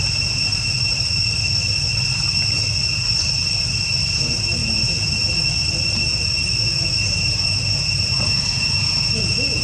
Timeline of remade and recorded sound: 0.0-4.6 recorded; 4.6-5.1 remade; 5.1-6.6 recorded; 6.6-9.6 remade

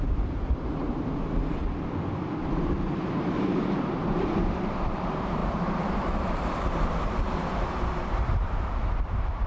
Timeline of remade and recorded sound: 0.0-1.6 remade; 1.6-2.5 recorded; 2.5-9.5 remade

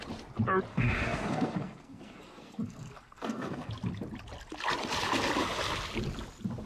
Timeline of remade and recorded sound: 0.0-0.7 recorded; 0.7-3.7 remade; 3.7-6.7 recorded

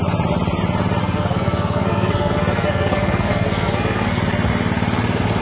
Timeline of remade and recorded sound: 0.0-1.0 recorded; 1.0-4.2 remade; 4.2-5.4 recorded

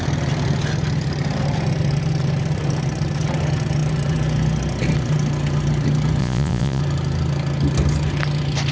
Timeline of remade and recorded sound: 0.0-6.2 recorded; 6.2-6.8 remade; 6.8-8.7 recorded

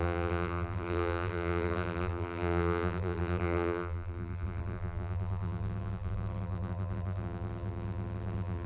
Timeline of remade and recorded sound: 0.0-8.7 remade